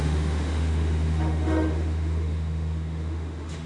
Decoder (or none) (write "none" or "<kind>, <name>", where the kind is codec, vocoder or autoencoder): autoencoder, DAC-VAE